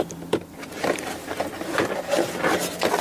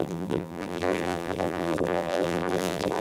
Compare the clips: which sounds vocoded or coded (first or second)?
second